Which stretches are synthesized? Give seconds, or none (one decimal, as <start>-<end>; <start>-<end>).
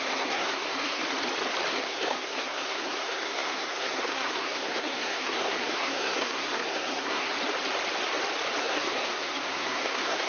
0.0-1.0; 1.7-7.3; 8.6-10.3